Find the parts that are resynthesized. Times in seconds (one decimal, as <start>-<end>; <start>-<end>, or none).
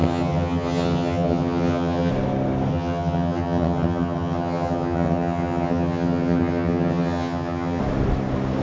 0.0-2.1; 2.7-7.8